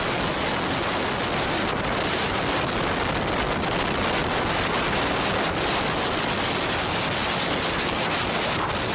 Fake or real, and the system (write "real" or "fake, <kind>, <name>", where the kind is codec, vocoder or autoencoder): real